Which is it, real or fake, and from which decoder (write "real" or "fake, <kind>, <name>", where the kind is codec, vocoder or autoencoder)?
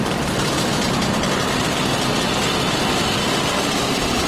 real